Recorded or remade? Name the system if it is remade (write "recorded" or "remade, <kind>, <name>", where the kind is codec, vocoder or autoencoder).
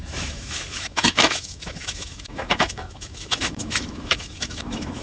remade, autoencoder, DAC-VAE